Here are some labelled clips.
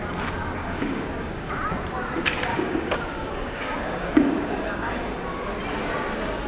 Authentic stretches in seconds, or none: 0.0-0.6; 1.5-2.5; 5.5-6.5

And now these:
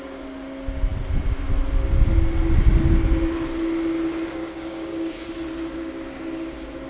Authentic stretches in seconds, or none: 0.0-4.4; 5.3-6.9

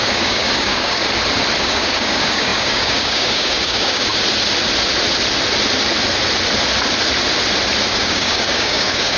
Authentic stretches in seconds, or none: 1.0-1.6; 4.1-7.9

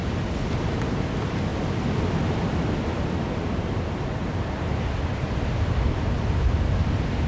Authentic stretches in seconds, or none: 0.0-7.3

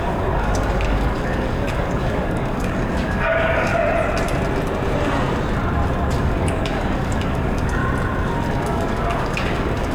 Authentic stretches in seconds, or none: 3.7-6.2; 7.8-8.5

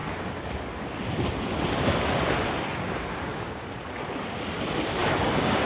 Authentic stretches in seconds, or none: 0.0-3.3; 3.8-5.0

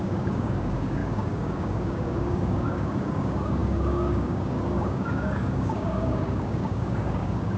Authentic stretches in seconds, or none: none

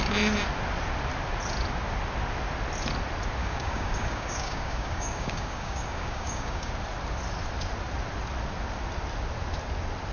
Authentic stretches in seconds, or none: 0.0-3.4; 6.7-10.1